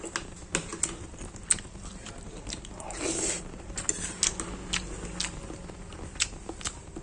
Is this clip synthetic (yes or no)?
no